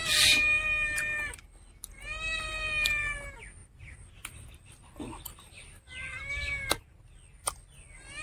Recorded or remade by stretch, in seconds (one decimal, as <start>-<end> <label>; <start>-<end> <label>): 0.0-8.2 recorded